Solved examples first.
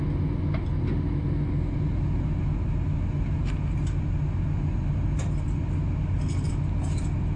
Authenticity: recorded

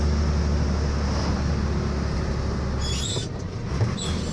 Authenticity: recorded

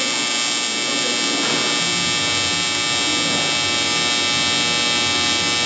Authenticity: recorded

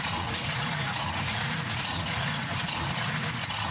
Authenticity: remade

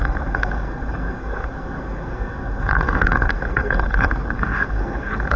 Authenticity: remade